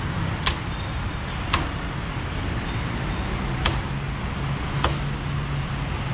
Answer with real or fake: real